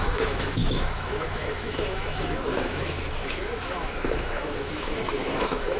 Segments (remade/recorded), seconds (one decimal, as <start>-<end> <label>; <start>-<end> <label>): 0.0-5.8 remade